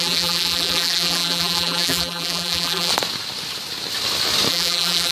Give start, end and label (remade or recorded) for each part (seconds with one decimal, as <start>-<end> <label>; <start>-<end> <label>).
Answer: 0.0-2.9 remade; 2.9-4.5 recorded; 4.5-5.1 remade